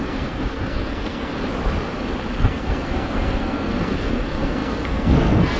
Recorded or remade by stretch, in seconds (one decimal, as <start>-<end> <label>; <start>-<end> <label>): 0.0-1.3 remade; 1.3-2.4 recorded; 2.4-5.6 remade